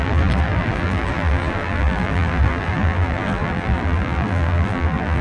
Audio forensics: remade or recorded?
remade